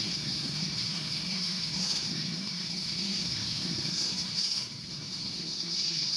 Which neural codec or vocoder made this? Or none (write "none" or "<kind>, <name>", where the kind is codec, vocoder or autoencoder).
codec, SNAC